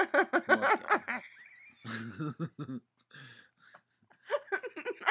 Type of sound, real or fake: real